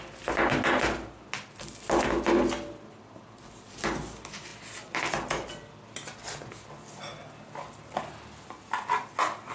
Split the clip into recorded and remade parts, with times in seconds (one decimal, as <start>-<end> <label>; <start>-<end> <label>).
0.0-9.5 recorded